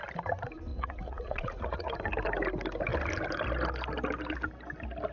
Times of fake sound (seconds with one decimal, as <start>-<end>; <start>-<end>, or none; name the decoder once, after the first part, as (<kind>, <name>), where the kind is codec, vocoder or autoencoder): 0.7-1.9 (vocoder, Vocos)